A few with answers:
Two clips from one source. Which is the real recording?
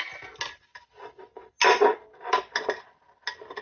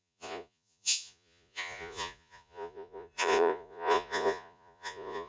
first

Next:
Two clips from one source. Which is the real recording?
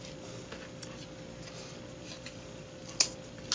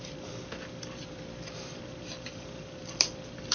first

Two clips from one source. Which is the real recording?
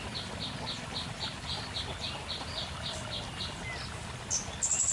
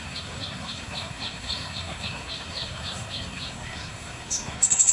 first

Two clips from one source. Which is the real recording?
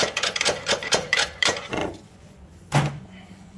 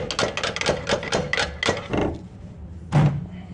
second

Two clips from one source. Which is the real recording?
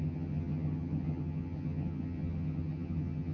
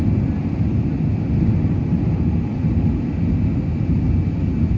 second